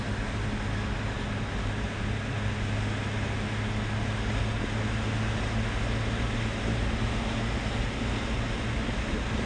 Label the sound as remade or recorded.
recorded